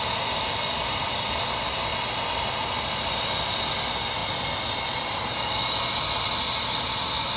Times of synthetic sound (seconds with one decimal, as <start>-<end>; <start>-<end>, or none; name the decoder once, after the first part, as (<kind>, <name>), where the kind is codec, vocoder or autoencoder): none